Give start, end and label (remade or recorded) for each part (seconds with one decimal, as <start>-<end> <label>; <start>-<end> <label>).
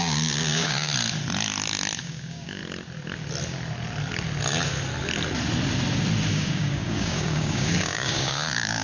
0.0-0.9 remade; 0.9-2.0 recorded; 2.0-2.6 remade; 2.6-6.3 recorded; 6.3-8.8 remade